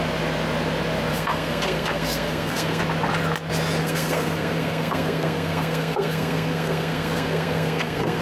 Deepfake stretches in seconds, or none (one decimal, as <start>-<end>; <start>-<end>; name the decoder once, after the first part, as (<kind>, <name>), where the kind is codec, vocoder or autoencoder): 1.1-2.8 (codec, SNAC); 3.8-8.2